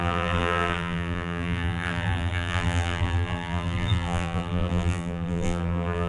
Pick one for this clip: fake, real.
fake